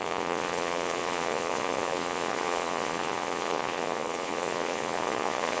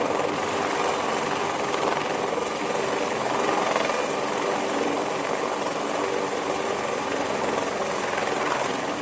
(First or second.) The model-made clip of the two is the first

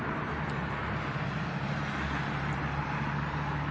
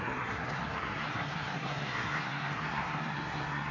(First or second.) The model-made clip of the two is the second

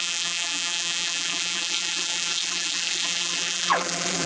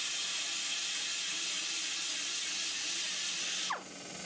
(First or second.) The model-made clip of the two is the first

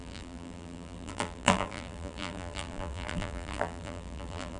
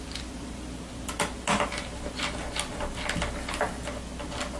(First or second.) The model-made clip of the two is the first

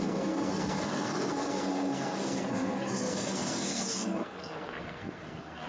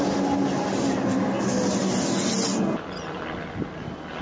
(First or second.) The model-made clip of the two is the first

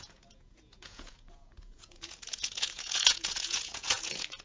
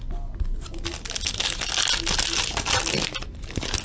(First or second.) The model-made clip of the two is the first